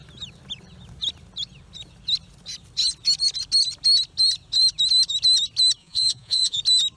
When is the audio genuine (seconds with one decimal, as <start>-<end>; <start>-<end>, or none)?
0.0-5.8; 6.6-7.0